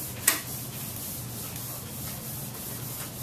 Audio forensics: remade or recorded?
recorded